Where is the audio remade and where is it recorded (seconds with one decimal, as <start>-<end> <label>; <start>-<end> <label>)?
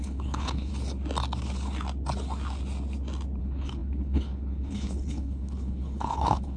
0.0-0.7 remade; 0.7-3.4 recorded; 3.4-6.6 remade